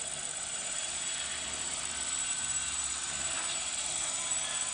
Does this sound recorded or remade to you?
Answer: remade